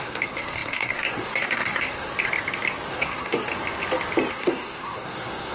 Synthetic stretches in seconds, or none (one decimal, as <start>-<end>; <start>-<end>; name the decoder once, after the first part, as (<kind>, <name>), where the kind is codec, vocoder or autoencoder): 0.0-2.1 (codec, SNAC); 2.9-3.5; 4.3-5.5